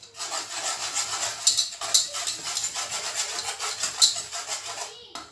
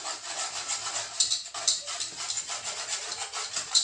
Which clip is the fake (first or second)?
second